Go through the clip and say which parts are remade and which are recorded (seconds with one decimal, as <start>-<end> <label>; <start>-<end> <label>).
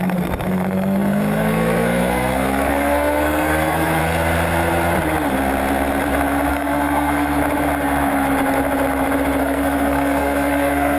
0.0-4.0 remade; 4.0-6.5 recorded; 6.5-7.4 remade; 7.4-9.4 recorded; 9.4-11.0 remade